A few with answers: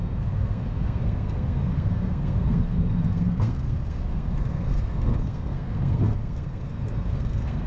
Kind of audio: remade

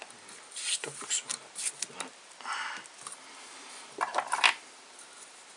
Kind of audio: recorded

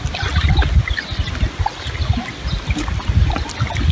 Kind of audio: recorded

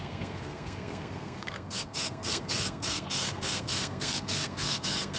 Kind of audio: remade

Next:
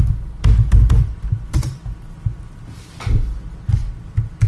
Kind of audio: recorded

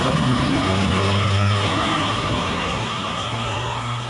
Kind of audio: remade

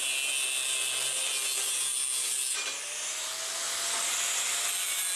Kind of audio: recorded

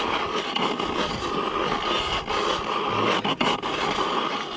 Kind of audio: recorded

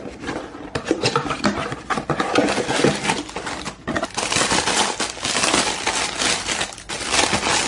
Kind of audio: recorded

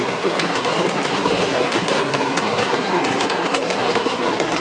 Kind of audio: remade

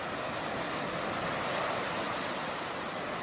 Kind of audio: recorded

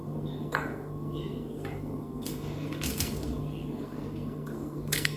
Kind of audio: remade